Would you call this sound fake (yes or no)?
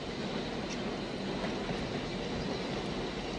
no